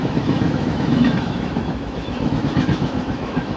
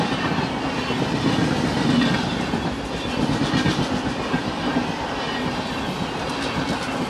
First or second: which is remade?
first